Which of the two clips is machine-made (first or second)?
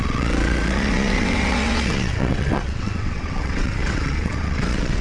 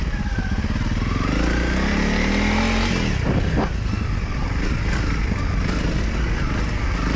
first